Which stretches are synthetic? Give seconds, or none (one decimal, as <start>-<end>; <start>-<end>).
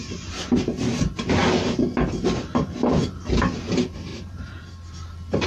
0.0-0.6; 4.1-4.6